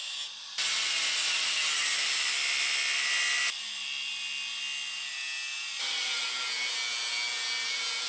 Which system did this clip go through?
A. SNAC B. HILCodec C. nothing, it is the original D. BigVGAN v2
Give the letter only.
C